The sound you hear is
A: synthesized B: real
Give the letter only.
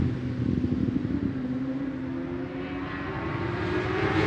B